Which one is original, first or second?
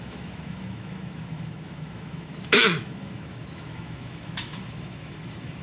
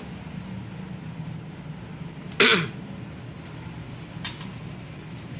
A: second